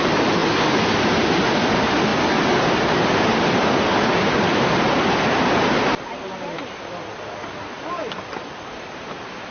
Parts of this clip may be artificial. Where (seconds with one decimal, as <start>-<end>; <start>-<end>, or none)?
none